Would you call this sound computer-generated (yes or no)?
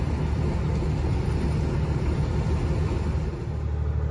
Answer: no